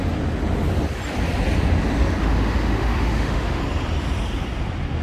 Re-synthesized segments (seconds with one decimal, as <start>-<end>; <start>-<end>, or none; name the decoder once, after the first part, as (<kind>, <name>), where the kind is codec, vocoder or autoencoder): 2.2-3.6 (autoencoder, DAC-VAE)